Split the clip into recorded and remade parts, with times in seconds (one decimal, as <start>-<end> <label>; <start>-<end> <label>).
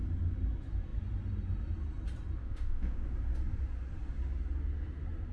0.0-2.4 recorded; 2.4-3.1 remade; 3.1-5.3 recorded